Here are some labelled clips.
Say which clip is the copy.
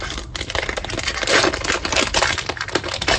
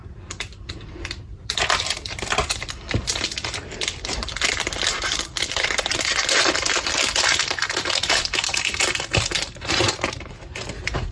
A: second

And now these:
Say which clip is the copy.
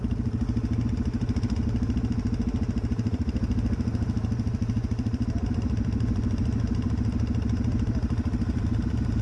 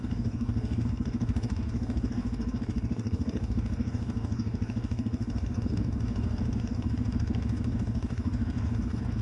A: second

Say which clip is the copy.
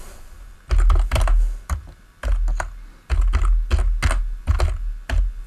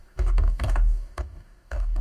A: second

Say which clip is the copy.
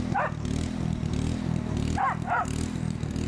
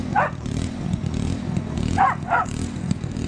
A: second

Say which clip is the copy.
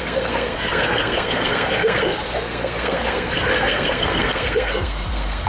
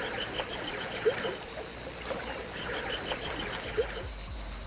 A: first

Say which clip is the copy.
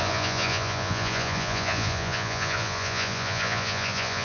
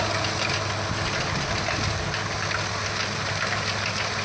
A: first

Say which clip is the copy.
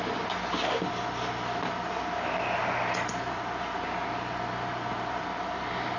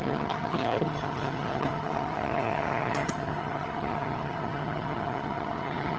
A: second